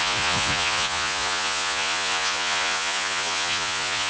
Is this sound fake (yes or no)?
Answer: yes